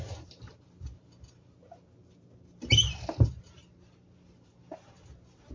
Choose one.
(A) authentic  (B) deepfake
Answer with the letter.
A